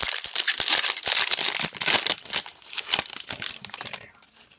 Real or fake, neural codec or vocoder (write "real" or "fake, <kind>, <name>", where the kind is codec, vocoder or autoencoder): real